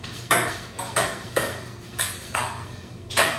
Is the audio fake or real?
fake